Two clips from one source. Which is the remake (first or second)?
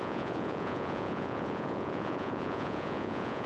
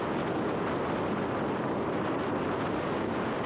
first